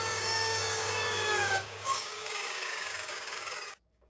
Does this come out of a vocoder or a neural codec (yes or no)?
yes